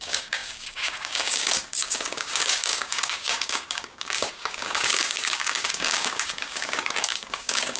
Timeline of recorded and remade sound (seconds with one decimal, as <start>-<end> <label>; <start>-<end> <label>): 0.0-7.8 remade